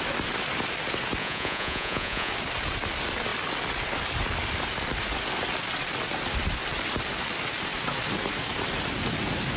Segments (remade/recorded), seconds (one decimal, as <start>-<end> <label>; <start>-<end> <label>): 0.0-1.2 recorded; 1.2-2.3 remade; 2.3-9.6 recorded